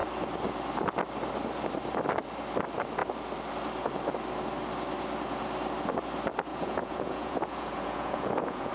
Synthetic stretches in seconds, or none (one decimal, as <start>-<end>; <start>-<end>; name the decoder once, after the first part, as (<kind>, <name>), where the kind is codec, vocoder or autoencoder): 6.5-8.7 (vocoder, Vocos)

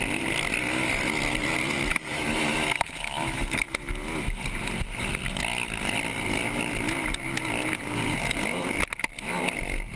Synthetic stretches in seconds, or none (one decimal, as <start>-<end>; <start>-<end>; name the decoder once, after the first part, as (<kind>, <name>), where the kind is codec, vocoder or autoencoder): 1.9-3.8 (autoencoder, DAC-VAE)

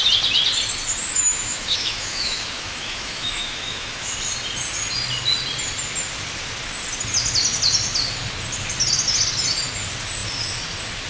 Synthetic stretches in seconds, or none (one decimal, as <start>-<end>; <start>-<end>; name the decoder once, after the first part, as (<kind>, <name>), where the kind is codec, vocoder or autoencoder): 1.1-4.1 (autoencoder, DAC-VAE)

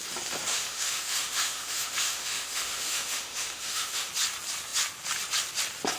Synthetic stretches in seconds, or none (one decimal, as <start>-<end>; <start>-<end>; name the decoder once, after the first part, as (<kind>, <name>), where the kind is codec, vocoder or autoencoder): 0.5-4.1 (autoencoder, DAC-VAE)

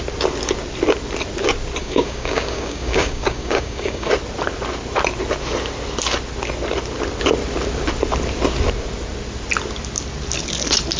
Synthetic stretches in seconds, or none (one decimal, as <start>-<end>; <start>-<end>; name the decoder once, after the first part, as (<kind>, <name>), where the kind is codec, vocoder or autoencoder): 1.8-4.1 (codec, DAC)